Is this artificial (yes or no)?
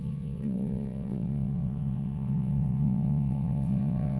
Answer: yes